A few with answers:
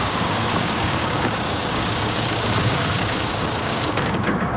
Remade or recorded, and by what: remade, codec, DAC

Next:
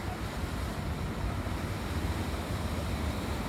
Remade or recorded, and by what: recorded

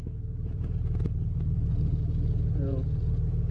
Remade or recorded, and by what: remade, vocoder, Vocos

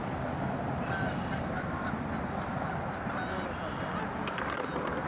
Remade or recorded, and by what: remade, vocoder, BigVGAN v2